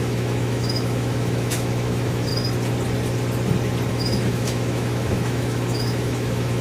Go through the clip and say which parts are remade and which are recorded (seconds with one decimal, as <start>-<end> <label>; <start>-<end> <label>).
0.0-2.3 remade; 2.3-3.9 recorded; 3.9-6.6 remade